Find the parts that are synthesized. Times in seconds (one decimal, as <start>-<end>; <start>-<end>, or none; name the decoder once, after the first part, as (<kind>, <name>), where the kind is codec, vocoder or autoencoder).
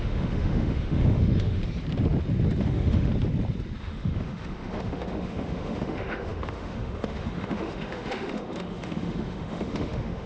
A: 0.0-1.6 (autoencoder, DAC-VAE); 2.6-3.1; 3.8-10.3